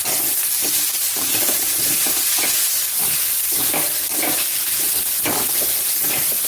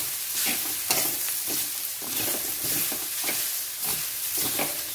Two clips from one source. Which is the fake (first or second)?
second